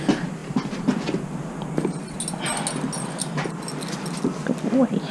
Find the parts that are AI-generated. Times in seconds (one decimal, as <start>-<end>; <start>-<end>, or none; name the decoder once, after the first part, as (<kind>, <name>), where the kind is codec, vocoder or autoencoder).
none